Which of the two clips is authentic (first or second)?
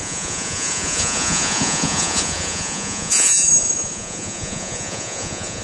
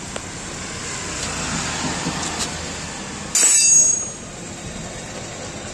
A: second